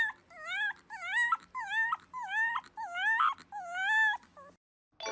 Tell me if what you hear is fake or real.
real